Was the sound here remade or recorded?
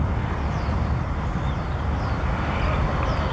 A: recorded